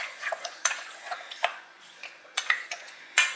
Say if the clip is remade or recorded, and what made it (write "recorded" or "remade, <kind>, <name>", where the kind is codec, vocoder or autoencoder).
remade, vocoder, Vocos